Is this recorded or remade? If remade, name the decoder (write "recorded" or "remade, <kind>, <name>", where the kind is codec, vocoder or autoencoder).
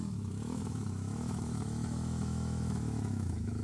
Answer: remade, autoencoder, DAC-VAE